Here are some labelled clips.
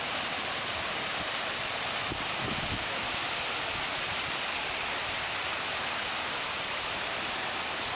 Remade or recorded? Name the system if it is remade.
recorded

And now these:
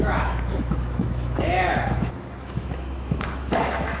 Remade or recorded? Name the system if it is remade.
remade, autoencoder, DAC-VAE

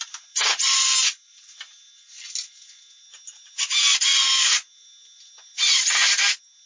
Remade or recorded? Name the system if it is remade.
recorded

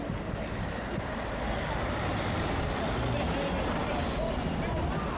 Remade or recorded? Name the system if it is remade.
recorded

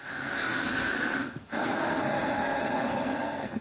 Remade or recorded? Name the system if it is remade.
remade, codec, SNAC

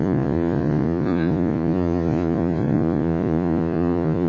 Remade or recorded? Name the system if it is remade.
remade, vocoder, Vocos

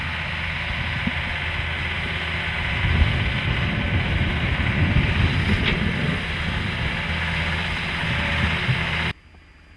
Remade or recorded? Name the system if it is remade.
recorded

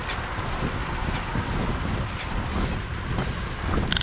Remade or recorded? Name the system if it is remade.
recorded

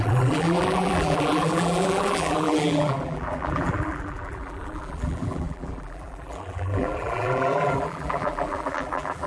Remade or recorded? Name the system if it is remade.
remade, vocoder, BigVGAN v2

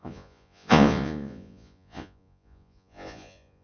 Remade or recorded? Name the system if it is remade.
remade, vocoder, Vocos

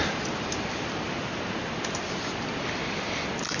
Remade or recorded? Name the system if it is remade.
recorded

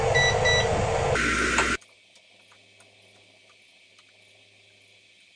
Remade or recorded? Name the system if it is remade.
recorded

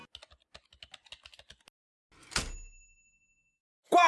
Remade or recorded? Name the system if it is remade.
recorded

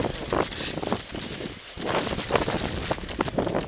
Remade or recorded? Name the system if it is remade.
recorded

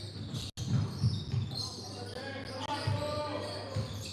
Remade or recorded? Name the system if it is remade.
recorded